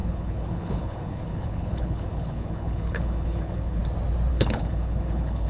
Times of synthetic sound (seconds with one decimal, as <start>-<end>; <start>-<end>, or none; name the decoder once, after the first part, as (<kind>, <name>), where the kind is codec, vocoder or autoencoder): 0.0-3.8 (codec, HILCodec); 4.3-5.5